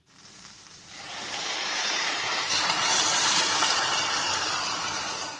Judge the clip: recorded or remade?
remade